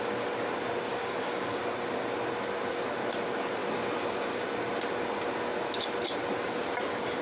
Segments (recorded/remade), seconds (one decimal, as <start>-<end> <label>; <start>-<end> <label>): 0.0-0.9 recorded; 0.9-1.6 remade; 1.6-7.2 recorded